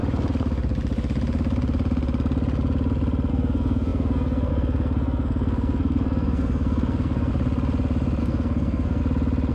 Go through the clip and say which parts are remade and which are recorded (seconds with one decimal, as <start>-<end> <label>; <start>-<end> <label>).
0.0-3.3 recorded; 3.3-7.3 remade; 7.3-8.2 recorded; 8.2-9.0 remade; 9.0-9.5 recorded